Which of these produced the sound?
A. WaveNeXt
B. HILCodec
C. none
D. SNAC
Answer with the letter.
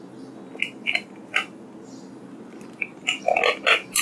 C